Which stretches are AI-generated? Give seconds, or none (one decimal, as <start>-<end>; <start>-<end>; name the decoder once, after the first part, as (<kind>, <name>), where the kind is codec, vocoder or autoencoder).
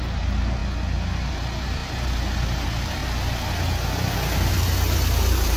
0.0-0.6 (vocoder, BigVGAN v2); 1.3-3.0; 4.5-5.6